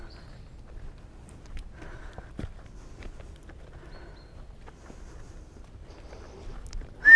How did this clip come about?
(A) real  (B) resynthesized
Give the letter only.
A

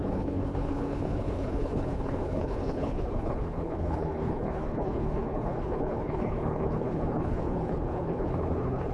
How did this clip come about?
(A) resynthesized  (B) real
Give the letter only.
A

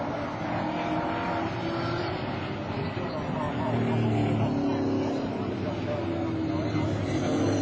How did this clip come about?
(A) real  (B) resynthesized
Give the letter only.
A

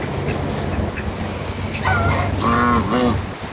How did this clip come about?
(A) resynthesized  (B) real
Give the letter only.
B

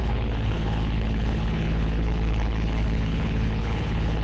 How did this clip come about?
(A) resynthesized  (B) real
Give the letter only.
A